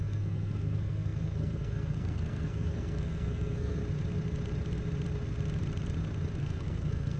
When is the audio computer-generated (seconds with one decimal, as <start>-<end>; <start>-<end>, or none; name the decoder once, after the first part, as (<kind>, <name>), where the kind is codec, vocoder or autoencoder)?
0.0-3.8 (codec, SNAC); 6.4-7.2